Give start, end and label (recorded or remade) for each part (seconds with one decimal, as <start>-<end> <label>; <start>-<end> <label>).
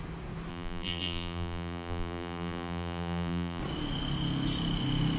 0.0-0.5 recorded; 0.5-3.6 remade; 3.6-5.2 recorded